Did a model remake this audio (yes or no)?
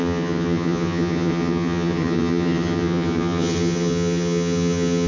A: yes